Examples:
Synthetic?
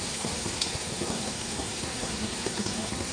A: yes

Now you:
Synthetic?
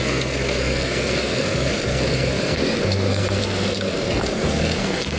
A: yes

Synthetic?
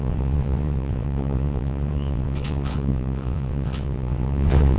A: yes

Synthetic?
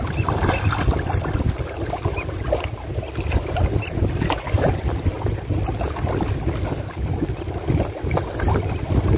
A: no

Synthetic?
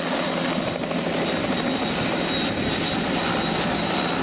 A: no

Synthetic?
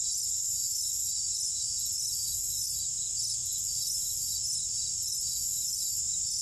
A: no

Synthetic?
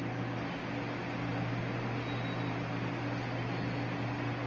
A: no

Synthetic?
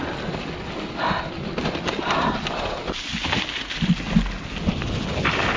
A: no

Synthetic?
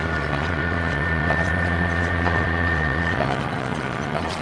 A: yes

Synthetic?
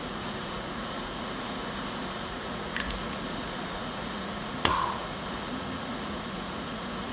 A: yes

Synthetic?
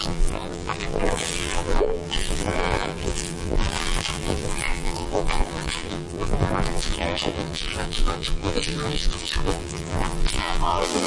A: yes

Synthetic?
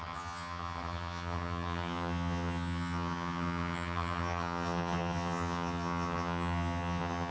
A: yes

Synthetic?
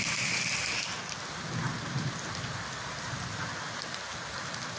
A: no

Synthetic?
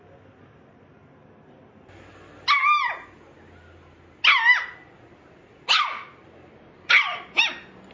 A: no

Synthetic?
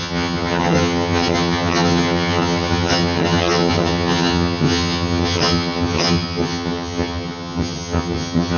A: yes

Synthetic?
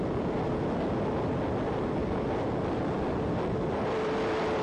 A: no